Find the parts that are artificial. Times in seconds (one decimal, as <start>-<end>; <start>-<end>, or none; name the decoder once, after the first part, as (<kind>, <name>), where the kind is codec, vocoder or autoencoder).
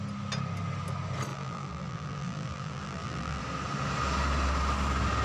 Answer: 1.3-3.4 (vocoder, BigVGAN v2)